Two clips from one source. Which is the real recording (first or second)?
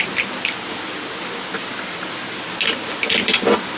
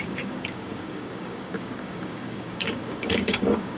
first